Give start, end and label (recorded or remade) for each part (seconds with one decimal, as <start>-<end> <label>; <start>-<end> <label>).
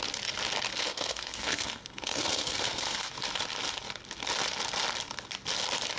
0.0-0.7 recorded; 0.7-3.1 remade; 3.1-6.0 recorded